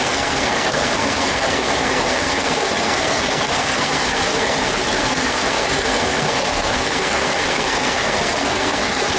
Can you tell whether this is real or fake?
fake